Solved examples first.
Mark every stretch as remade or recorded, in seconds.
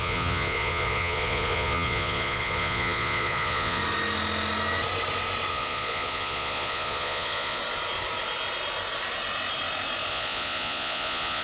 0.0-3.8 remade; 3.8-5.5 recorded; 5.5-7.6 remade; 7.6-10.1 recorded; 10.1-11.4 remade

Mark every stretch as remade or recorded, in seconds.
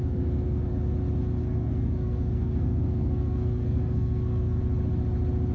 0.0-0.7 remade; 0.7-1.4 recorded; 1.4-4.6 remade; 4.6-5.5 recorded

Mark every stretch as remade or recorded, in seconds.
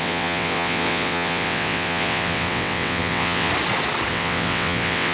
0.0-3.5 remade; 3.5-4.1 recorded; 4.1-5.1 remade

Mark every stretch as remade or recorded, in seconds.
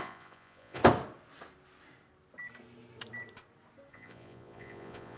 0.0-0.8 remade; 0.8-3.9 recorded; 3.9-5.2 remade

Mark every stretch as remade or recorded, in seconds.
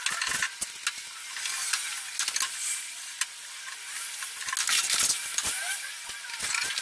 0.0-6.8 recorded